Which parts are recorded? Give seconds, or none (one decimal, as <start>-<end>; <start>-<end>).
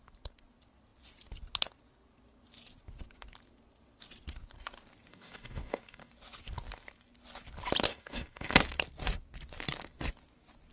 0.0-5.1; 6.1-7.9; 8.5-10.7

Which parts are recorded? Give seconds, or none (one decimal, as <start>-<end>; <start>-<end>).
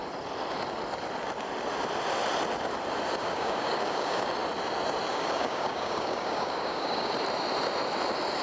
0.0-3.2; 4.3-5.1; 7.1-8.4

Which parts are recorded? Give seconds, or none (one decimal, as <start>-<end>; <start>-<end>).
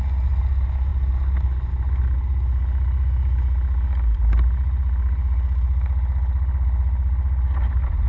0.0-8.1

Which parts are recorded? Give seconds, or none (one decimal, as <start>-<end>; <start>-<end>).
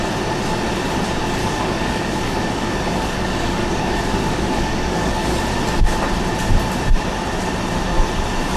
0.0-1.4; 5.4-8.6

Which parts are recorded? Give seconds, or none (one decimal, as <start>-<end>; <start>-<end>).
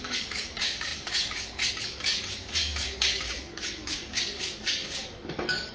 none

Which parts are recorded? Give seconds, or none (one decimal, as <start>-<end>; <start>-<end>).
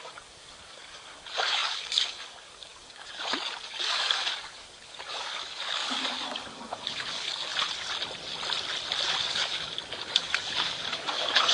7.5-9.2